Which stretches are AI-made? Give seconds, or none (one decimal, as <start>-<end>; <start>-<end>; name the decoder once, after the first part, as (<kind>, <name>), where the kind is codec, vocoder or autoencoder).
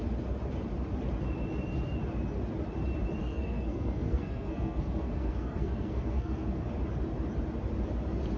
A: 3.2-6.6 (codec, SNAC)